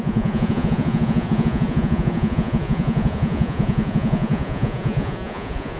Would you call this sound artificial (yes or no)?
yes